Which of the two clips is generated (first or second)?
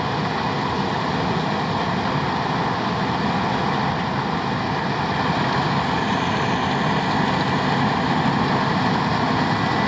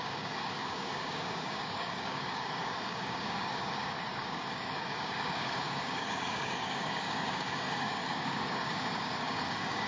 second